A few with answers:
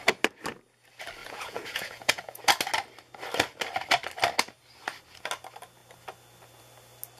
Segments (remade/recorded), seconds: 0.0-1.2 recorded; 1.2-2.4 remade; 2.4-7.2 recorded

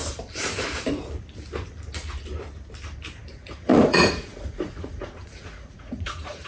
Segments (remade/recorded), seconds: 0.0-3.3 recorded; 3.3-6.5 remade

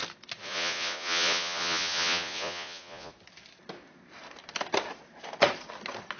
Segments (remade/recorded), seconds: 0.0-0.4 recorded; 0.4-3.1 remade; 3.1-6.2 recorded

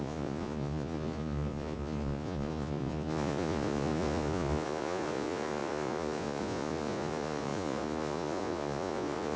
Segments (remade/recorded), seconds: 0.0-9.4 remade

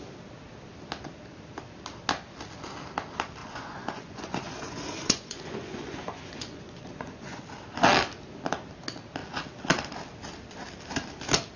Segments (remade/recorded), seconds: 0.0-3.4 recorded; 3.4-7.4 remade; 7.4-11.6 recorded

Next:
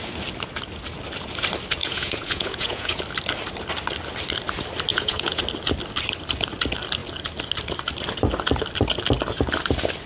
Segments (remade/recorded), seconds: 0.0-1.8 recorded; 1.8-3.0 remade; 3.0-4.9 recorded; 4.9-5.4 remade; 5.4-10.1 recorded

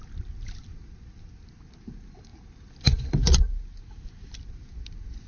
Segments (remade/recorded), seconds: 0.0-5.3 recorded